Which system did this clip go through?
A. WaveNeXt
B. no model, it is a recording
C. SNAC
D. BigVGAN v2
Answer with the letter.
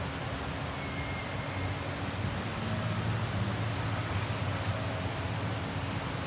B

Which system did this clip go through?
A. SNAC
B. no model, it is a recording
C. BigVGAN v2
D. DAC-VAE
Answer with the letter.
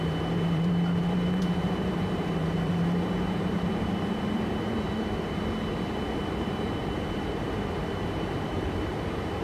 C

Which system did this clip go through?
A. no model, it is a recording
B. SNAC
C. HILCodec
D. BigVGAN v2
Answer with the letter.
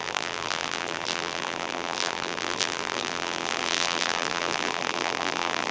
D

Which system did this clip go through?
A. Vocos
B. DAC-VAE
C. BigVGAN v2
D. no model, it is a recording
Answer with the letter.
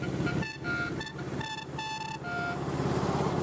D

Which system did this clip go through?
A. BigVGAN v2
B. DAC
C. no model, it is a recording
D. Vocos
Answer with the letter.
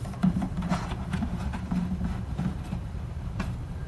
A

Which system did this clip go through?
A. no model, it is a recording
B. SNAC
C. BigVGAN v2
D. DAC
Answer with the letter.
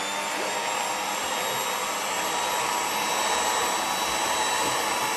A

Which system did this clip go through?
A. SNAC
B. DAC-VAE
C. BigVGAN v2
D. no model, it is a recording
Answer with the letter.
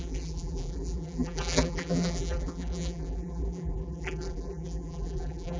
C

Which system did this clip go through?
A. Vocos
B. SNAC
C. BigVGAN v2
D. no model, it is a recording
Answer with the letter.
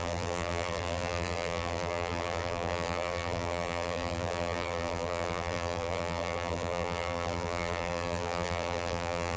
C